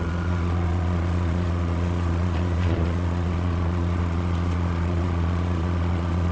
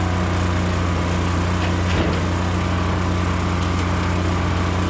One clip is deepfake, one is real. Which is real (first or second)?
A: second